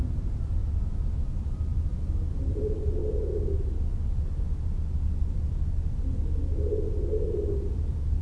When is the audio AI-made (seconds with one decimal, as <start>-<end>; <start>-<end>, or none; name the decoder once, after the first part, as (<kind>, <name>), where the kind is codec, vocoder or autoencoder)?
0.0-3.0 (vocoder, BigVGAN v2); 7.3-8.2